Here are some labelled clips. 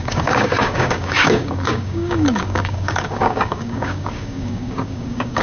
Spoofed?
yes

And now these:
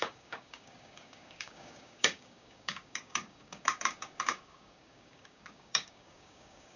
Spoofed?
yes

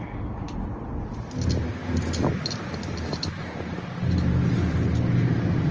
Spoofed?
no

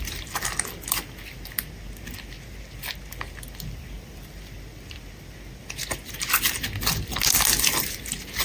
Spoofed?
no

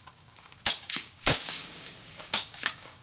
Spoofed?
yes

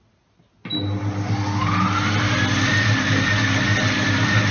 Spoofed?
no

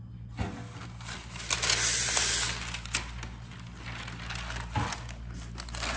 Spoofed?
no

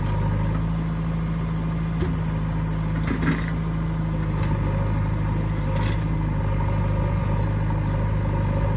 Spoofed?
no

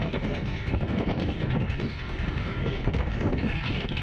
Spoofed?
yes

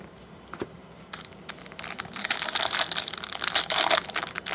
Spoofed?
no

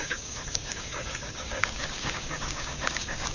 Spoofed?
yes